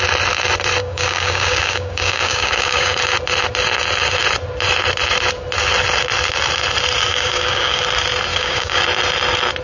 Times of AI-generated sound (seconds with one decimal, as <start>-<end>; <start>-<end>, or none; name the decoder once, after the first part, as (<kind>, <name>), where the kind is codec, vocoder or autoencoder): 0.8-3.0 (codec, DAC); 7.1-7.8; 8.3-8.8